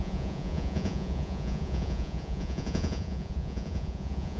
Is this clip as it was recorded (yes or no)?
no